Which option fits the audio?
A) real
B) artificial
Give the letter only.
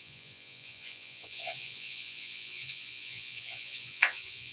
B